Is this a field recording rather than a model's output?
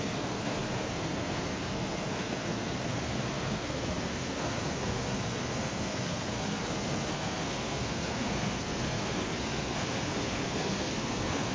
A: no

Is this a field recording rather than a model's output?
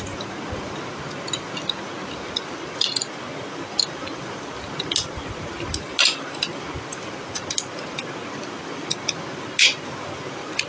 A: yes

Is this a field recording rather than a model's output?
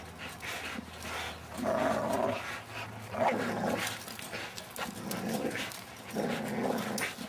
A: yes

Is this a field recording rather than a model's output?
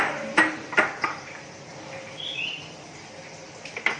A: no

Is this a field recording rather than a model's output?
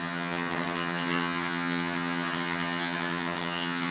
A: no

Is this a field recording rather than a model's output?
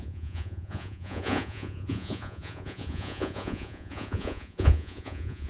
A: no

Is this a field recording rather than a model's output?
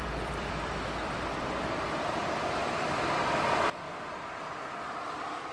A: no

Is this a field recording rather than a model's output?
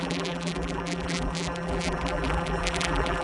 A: no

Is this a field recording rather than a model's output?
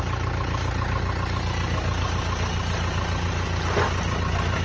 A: yes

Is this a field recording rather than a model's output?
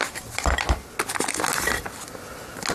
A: yes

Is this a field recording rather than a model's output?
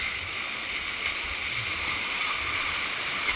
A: yes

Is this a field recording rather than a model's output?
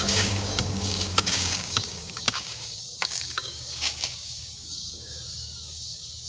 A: no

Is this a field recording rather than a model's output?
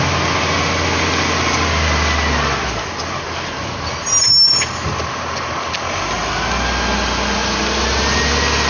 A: yes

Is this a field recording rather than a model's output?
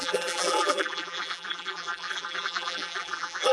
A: no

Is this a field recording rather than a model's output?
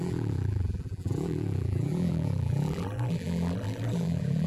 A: no